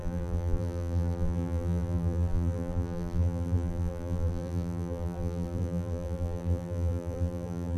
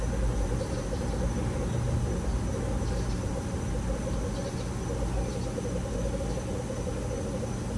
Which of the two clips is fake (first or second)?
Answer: first